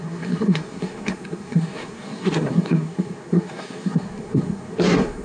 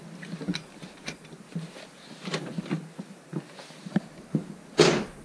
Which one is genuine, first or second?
second